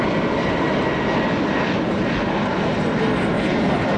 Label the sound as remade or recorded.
recorded